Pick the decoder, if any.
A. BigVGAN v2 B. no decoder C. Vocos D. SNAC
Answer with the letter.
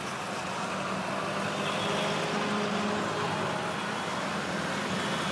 B